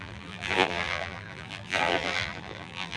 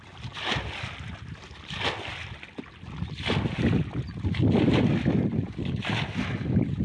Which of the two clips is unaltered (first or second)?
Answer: second